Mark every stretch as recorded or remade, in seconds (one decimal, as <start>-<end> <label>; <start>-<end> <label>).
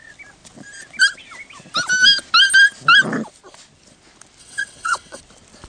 0.0-4.4 recorded; 4.4-5.2 remade; 5.2-5.7 recorded